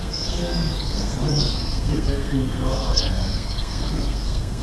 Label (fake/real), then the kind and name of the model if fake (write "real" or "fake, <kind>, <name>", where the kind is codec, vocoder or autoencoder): fake, codec, SNAC